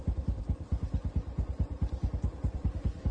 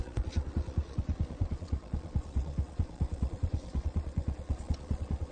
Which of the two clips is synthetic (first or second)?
second